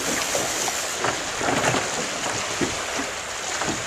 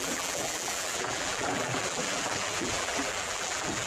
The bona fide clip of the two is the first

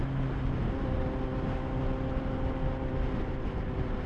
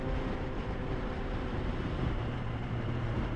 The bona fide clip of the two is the first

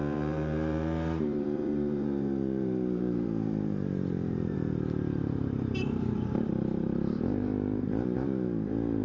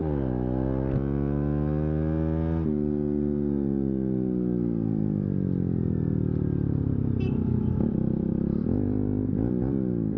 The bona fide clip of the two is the second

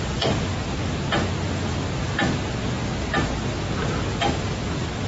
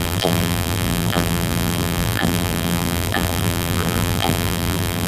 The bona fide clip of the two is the first